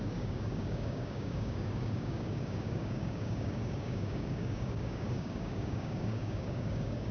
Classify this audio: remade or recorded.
remade